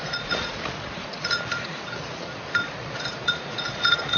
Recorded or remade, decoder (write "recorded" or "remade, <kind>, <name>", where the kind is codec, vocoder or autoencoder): remade, vocoder, Vocos